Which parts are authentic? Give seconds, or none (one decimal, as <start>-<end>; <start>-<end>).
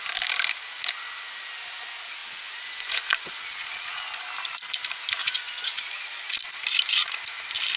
0.0-2.2; 4.2-5.2; 6.0-7.8